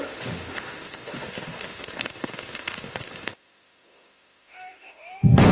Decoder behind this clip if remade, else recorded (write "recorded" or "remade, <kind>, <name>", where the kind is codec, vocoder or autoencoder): remade, autoencoder, DAC-VAE